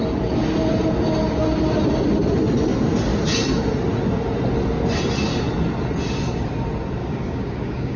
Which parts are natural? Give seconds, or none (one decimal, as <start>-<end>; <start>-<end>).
0.0-7.0